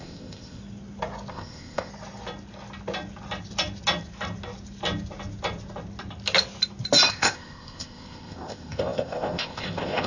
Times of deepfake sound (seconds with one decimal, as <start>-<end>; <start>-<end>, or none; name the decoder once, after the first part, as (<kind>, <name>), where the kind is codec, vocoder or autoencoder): 0.0-0.6 (codec, ZipCodec); 1.3-1.9; 7.1-10.1